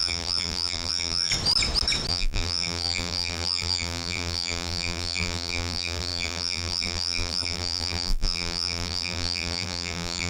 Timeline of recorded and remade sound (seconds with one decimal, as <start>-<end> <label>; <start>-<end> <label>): 0.0-1.3 remade; 1.3-2.1 recorded; 2.1-10.3 remade